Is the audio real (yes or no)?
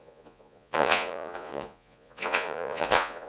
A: no